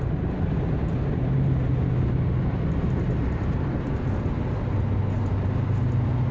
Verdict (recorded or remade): recorded